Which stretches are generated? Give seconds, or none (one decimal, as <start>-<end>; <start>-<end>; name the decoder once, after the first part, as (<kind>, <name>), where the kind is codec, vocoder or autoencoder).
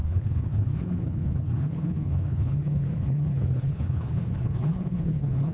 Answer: 0.0-5.5 (codec, HILCodec)